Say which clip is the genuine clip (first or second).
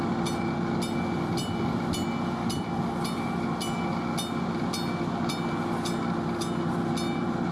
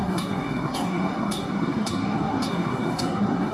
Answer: first